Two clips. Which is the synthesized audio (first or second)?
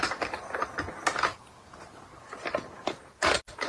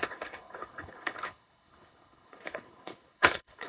second